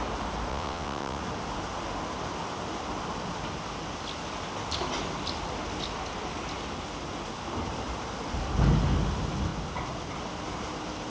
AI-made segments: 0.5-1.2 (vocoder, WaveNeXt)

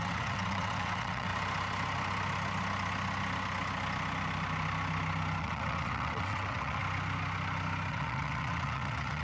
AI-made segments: 0.0-1.3 (vocoder, WaveNeXt); 5.4-6.8; 7.9-9.2

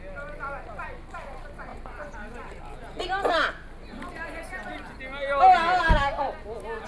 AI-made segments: none